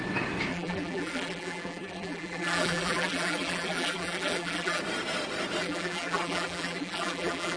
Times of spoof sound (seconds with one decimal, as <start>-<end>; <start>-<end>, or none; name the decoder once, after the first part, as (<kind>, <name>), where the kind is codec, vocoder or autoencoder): 0.5-4.8 (vocoder, BigVGAN v2); 5.6-7.6